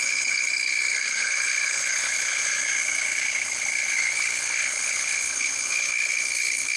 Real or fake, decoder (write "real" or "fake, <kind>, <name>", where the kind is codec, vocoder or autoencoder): fake, codec, HILCodec